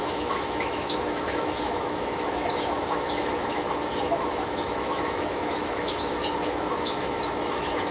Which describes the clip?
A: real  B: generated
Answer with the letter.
B